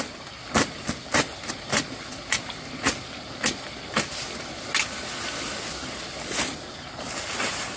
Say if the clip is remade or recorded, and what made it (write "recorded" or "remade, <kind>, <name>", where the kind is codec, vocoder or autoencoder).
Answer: recorded